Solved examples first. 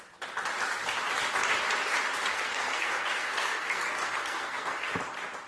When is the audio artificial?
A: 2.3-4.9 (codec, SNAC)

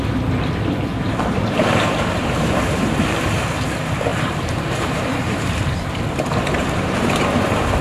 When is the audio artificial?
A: 0.9-3.0 (vocoder, BigVGAN v2); 4.1-5.9; 6.6-7.3